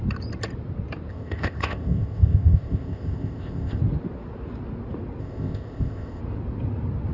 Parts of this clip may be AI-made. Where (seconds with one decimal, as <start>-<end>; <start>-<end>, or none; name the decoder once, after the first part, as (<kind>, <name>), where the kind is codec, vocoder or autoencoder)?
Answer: 1.1-3.8 (codec, ZipCodec); 5.2-6.2